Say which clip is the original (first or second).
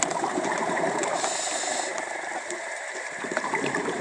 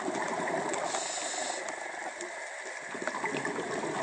second